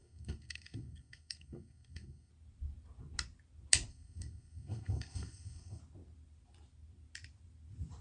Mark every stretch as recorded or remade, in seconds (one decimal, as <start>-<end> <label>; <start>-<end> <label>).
0.0-2.3 remade; 2.3-3.9 recorded; 3.9-5.8 remade; 5.8-8.0 recorded